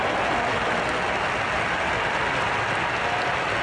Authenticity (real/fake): real